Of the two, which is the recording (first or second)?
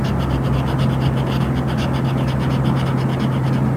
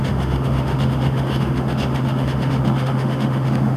first